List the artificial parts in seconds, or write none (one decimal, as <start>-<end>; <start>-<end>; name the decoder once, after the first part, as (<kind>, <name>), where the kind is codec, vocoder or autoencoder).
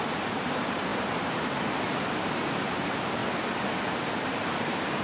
0.0-3.2 (vocoder, BigVGAN v2); 3.9-5.0